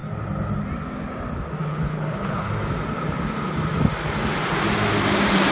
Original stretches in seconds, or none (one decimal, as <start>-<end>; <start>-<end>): 0.0-1.7; 2.5-5.5

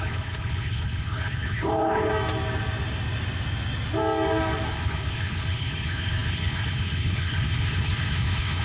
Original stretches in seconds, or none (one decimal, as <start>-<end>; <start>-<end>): 2.1-4.7

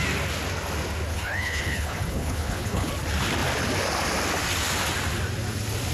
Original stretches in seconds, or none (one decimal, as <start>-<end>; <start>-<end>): 0.0-1.1; 2.9-5.9

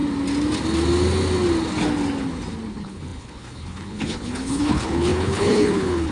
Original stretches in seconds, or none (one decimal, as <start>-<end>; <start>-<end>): 0.0-2.7